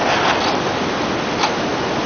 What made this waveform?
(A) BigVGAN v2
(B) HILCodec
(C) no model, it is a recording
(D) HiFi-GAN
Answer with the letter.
C